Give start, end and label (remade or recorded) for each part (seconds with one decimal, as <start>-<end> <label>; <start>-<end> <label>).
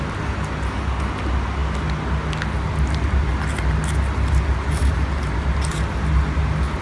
0.0-6.8 recorded